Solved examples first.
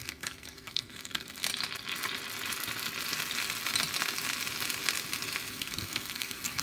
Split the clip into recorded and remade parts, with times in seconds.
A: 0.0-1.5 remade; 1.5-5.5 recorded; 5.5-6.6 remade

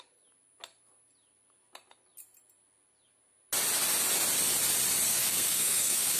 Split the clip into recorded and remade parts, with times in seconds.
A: 0.0-5.1 recorded; 5.1-6.2 remade

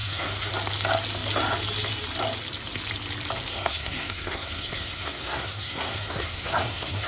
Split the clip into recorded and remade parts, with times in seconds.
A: 0.0-0.5 remade; 0.5-3.5 recorded; 3.5-7.1 remade

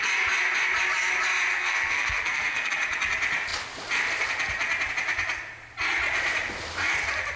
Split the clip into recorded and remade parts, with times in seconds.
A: 0.0-1.5 recorded; 1.5-2.7 remade; 2.7-7.4 recorded

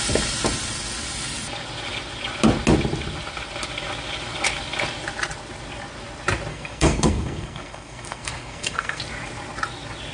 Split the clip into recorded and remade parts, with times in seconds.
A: 0.0-6.5 recorded; 6.5-9.0 remade; 9.0-10.1 recorded